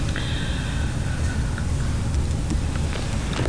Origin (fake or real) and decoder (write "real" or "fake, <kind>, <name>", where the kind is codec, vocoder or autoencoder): real